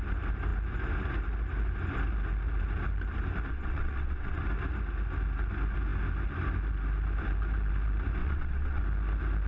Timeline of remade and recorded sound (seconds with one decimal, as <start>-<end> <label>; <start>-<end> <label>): 0.0-3.5 recorded; 3.5-4.4 remade; 4.4-8.2 recorded; 8.2-8.8 remade; 8.8-9.5 recorded